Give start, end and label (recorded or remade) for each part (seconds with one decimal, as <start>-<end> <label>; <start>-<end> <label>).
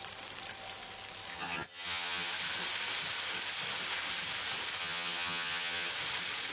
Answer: 0.0-1.3 recorded; 1.3-2.3 remade; 2.3-4.8 recorded; 4.8-5.9 remade; 5.9-6.5 recorded